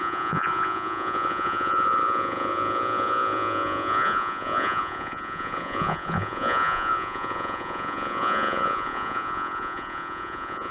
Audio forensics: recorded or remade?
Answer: remade